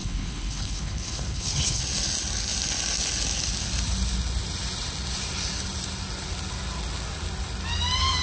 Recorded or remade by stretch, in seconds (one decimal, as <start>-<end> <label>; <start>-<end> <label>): 0.0-1.8 remade; 1.8-8.2 recorded